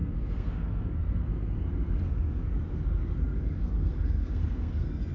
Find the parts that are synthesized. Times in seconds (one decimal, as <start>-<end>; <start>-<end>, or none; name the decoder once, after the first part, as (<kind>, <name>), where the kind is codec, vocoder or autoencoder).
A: 0.0-5.1 (codec, SNAC)